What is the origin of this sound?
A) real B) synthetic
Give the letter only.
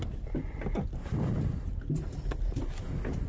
A